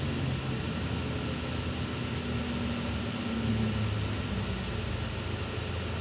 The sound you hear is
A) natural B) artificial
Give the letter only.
A